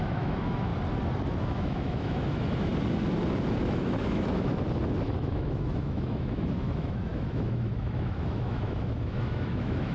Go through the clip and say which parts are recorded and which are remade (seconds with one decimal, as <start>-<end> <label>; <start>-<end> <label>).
0.0-0.7 remade; 0.7-1.4 recorded; 1.4-2.7 remade; 2.7-3.6 recorded; 3.6-4.5 remade; 4.5-5.2 recorded; 5.2-9.9 remade